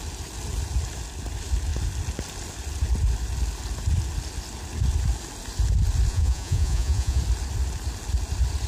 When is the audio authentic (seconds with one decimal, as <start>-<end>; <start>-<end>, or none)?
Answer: 0.0-6.1; 7.2-8.7